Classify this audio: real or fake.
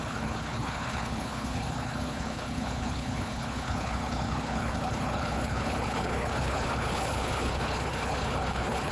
fake